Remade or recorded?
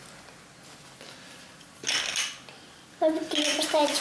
recorded